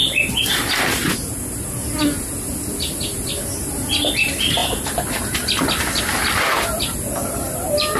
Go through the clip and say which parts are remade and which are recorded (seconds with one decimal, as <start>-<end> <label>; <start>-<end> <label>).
0.0-0.5 remade; 0.5-8.0 recorded